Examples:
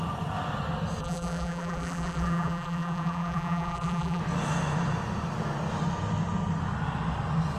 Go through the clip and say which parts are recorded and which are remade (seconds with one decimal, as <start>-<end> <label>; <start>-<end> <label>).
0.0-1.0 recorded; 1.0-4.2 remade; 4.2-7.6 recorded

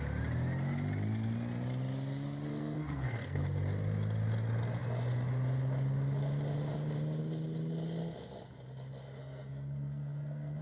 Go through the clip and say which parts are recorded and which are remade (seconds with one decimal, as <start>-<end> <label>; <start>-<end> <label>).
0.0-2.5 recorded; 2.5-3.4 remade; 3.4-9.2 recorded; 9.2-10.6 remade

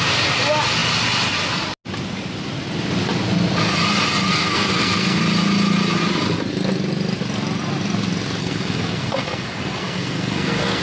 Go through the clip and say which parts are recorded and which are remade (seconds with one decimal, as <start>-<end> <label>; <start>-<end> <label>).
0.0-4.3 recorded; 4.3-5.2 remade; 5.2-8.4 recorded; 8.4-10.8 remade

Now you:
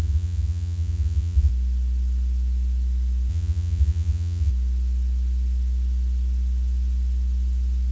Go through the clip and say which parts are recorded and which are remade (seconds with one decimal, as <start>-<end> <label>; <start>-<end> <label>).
0.0-1.5 remade; 1.5-3.3 recorded; 3.3-4.5 remade; 4.5-7.9 recorded

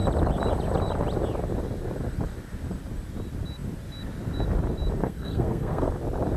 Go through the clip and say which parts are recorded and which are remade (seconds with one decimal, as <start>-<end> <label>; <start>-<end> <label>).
0.0-5.0 recorded; 5.0-5.9 remade; 5.9-6.4 recorded

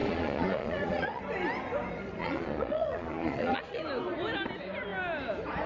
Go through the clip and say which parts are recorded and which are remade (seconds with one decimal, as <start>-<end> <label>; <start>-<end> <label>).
0.0-1.2 remade; 1.2-2.2 recorded; 2.2-3.8 remade; 3.8-5.7 recorded